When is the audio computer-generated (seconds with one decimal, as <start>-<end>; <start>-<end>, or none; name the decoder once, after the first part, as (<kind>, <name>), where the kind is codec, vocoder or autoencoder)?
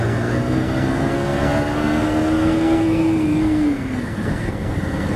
0.0-5.2 (codec, SNAC)